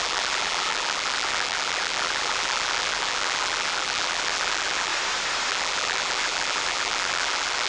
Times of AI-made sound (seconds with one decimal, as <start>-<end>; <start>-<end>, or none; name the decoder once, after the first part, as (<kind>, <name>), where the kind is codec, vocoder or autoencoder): 0.0-4.9 (vocoder, BigVGAN v2); 5.5-7.7